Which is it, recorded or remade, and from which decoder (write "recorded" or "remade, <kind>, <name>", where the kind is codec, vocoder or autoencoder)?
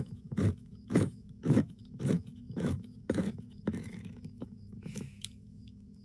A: remade, autoencoder, DAC-VAE